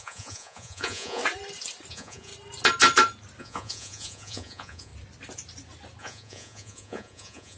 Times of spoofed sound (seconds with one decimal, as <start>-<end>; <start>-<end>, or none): 0.0-1.2; 1.9-2.3; 3.4-4.9; 6.0-7.6